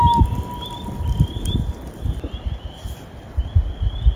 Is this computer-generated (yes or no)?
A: no